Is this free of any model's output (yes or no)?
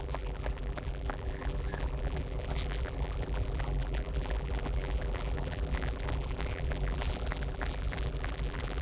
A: no